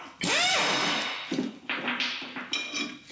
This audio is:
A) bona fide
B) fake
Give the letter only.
A